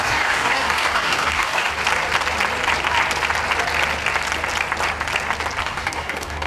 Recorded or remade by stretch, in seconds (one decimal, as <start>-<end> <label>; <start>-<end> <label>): 0.0-1.7 remade; 1.7-5.6 recorded; 5.6-6.5 remade